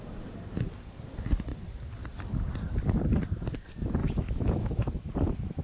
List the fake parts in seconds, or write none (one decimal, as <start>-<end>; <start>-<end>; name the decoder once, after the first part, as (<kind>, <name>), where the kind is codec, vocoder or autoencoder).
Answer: 4.0-5.1 (autoencoder, DAC-VAE)